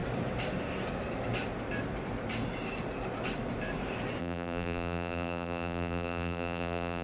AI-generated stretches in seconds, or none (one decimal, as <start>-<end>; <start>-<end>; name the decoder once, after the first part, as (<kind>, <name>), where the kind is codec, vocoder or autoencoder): 4.2-7.0 (vocoder, BigVGAN v2)